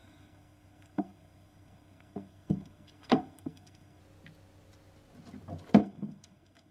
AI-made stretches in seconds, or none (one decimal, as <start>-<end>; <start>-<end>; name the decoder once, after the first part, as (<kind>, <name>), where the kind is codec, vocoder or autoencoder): 0.0-4.0 (codec, SNAC); 5.8-6.7